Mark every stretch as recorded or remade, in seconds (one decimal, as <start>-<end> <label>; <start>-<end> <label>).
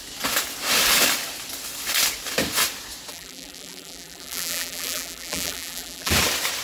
0.0-3.1 recorded; 3.1-6.1 remade; 6.1-6.6 recorded